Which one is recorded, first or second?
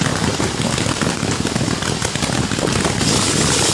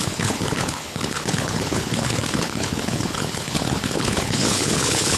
first